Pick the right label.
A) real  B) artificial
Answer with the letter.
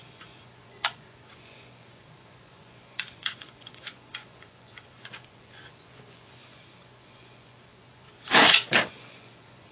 B